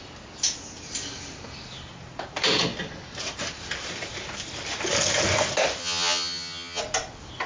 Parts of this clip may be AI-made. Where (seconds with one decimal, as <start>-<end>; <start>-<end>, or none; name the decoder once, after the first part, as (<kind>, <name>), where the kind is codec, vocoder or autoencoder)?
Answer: 5.8-6.8 (vocoder, HiFi-GAN)